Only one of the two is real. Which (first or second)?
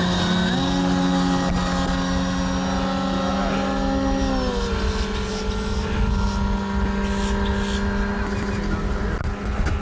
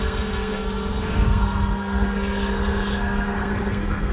first